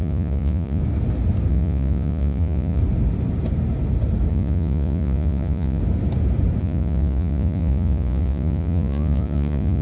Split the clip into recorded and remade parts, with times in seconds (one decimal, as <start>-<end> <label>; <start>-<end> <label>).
0.0-0.8 remade; 0.8-1.5 recorded; 1.5-2.8 remade; 2.8-4.3 recorded; 4.3-5.8 remade; 5.8-6.6 recorded; 6.6-9.8 remade